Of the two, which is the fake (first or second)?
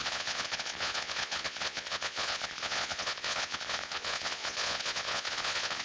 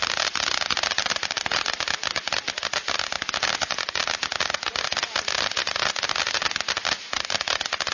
first